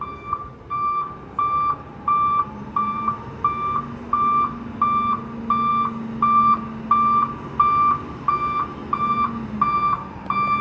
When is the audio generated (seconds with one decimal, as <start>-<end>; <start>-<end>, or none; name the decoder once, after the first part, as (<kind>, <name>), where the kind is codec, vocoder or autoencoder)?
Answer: 1.9-3.3 (vocoder, BigVGAN v2)